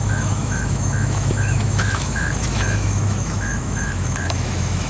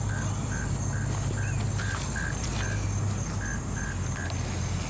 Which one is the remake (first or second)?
first